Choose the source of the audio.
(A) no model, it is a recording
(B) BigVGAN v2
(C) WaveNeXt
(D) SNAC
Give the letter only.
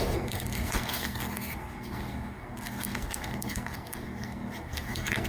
D